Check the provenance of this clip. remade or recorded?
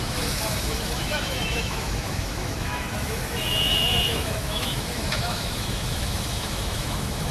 remade